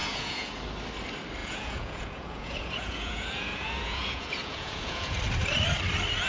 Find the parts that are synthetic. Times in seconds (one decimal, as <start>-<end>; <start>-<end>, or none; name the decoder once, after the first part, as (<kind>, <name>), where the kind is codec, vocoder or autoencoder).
0.0-0.6 (vocoder, Vocos); 1.4-5.2